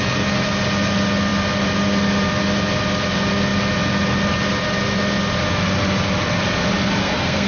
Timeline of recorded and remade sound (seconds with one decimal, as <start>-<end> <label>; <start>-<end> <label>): 0.0-7.0 recorded; 7.0-7.5 remade